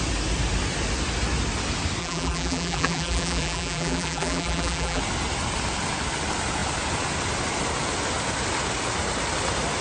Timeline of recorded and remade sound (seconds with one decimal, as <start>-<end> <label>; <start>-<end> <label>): 0.0-2.0 recorded; 2.0-5.0 remade; 5.0-9.8 recorded